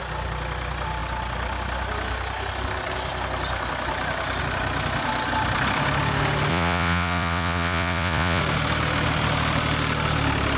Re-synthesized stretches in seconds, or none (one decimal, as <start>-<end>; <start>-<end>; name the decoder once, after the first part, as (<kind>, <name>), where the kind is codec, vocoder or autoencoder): 6.5-8.4 (vocoder, Vocos)